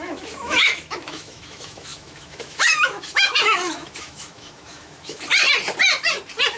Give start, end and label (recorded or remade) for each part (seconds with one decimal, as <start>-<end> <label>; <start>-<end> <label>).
0.0-5.3 remade; 5.3-6.6 recorded